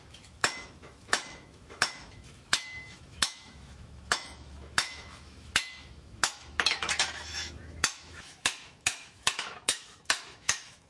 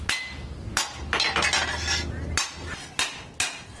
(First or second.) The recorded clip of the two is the second